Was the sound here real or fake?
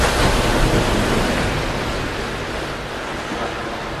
real